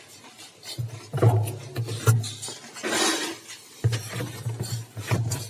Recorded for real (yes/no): yes